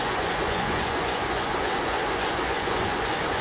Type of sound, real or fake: fake